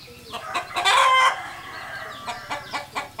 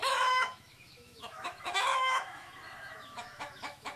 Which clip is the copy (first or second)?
second